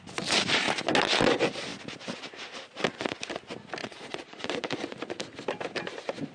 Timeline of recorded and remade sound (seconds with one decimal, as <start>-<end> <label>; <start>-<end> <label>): 0.0-3.8 recorded; 3.8-4.4 remade; 4.4-6.3 recorded